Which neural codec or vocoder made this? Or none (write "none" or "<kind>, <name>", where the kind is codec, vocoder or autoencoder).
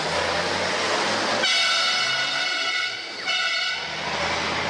none